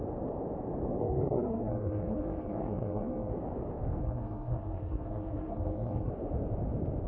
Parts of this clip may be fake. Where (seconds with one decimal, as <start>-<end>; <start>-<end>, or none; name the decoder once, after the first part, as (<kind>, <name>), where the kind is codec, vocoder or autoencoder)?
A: 1.0-3.3 (codec, SNAC); 4.0-6.1

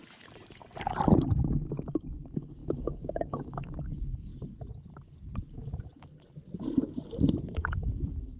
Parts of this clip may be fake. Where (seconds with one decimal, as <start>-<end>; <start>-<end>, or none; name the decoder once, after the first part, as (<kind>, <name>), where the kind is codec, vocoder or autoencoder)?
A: 1.4-4.3 (codec, DAC); 7.4-8.4

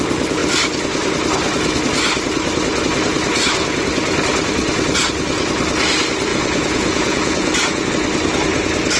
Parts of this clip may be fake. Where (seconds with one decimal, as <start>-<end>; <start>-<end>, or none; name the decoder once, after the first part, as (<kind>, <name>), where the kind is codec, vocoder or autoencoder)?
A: 6.3-7.9 (vocoder, Vocos)

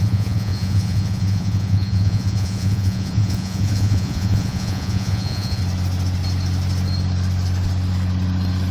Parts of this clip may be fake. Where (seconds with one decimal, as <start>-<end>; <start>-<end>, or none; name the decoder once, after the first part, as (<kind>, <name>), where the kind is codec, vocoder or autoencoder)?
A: 0.0-5.6 (vocoder, Vocos)

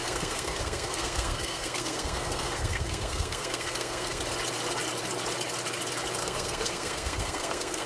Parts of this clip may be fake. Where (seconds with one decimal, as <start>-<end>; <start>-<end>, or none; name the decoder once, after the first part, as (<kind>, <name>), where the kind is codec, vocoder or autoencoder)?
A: 0.0-4.2 (codec, SNAC); 6.2-7.9